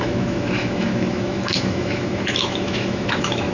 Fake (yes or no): yes